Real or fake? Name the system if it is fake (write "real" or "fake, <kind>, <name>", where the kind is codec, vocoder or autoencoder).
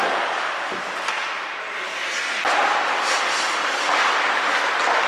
real